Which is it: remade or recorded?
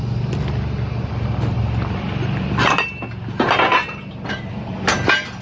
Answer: recorded